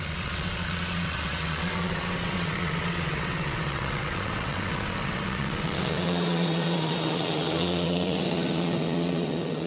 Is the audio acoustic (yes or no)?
no